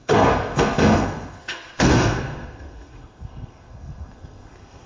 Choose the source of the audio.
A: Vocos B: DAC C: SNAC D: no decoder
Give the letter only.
C